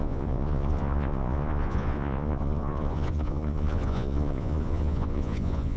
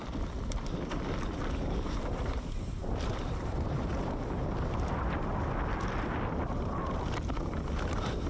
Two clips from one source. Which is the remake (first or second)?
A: first